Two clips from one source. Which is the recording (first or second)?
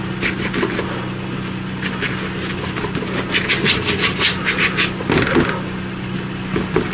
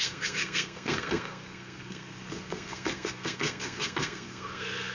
first